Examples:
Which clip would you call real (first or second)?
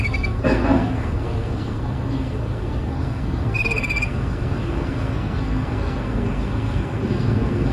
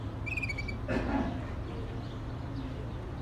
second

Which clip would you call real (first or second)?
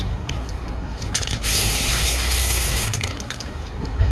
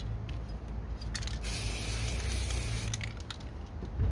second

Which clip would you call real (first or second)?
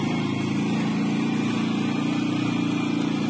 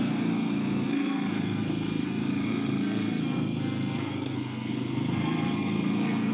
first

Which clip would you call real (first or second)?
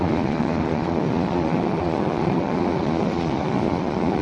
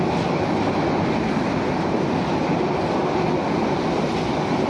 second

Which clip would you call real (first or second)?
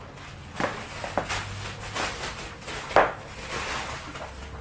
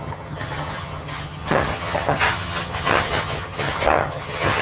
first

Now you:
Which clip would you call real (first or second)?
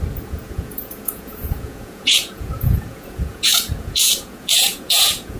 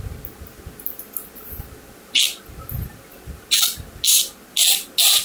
second